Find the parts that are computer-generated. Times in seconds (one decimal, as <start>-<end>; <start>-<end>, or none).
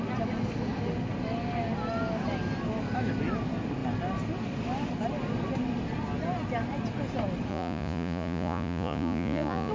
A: 7.5-9.7